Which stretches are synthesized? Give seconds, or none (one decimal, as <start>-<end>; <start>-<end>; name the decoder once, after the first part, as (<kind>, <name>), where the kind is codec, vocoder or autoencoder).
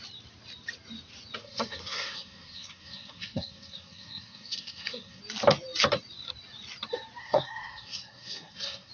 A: 1.4-5.2 (codec, SNAC); 7.2-8.9